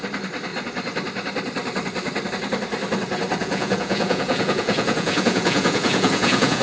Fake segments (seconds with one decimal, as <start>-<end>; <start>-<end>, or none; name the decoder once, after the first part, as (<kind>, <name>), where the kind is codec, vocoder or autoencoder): 3.4-6.6 (vocoder, Vocos)